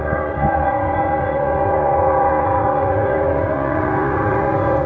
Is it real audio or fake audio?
fake